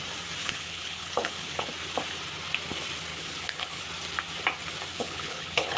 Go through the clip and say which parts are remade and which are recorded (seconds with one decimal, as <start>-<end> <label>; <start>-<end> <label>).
0.0-0.4 recorded; 0.4-1.7 remade; 1.7-3.1 recorded; 3.1-3.8 remade; 3.8-4.9 recorded; 4.9-5.8 remade